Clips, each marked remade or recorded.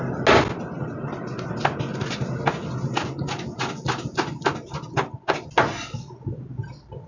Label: recorded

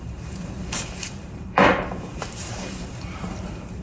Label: remade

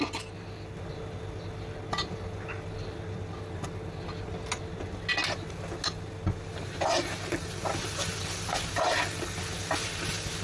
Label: recorded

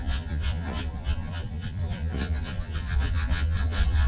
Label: remade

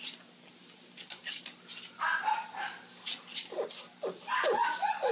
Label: recorded